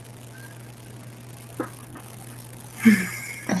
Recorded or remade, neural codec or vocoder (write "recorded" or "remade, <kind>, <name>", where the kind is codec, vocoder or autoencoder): recorded